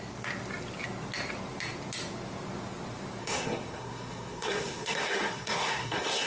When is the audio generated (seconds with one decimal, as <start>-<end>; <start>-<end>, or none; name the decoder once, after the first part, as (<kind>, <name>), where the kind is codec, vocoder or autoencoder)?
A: 3.2-6.3 (codec, SNAC)